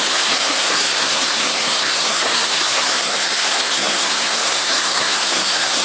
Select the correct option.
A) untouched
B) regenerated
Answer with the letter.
B